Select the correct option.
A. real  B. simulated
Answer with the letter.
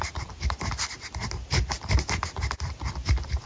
A